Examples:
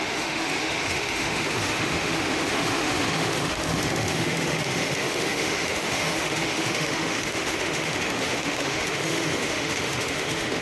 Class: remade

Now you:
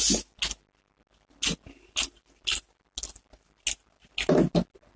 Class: recorded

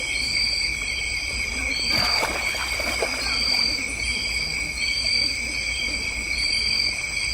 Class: recorded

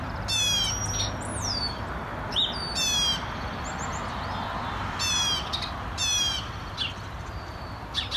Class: recorded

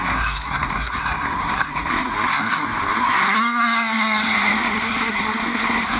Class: remade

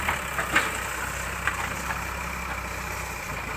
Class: recorded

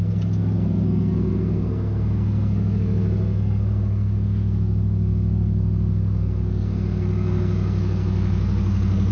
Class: remade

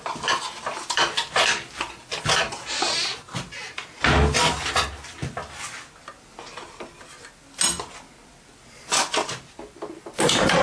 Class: recorded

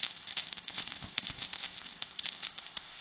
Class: remade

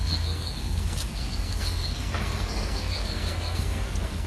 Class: remade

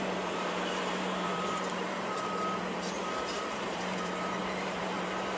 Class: remade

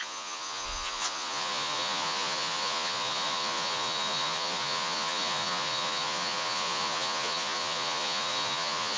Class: remade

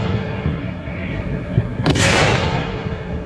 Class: remade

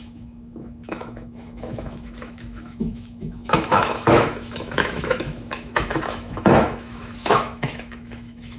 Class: remade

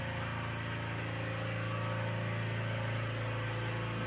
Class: recorded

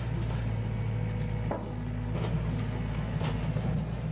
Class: recorded